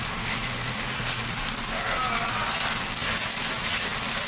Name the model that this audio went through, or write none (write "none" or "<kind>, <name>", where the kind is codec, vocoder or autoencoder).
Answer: none